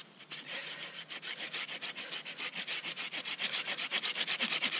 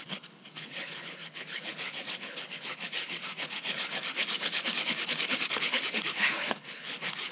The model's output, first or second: second